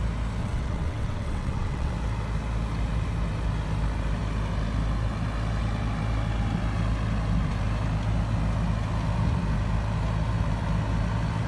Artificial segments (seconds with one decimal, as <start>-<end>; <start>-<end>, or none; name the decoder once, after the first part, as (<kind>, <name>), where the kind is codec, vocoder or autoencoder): 0.4-1.9 (vocoder, WaveNeXt)